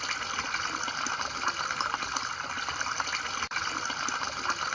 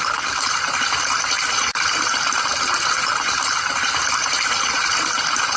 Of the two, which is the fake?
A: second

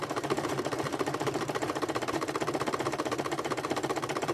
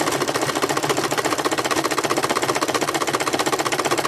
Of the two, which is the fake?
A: first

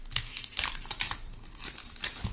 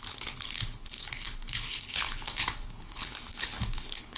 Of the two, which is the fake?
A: second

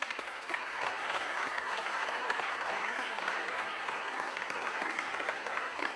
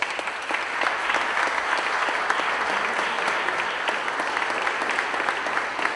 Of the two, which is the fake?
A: first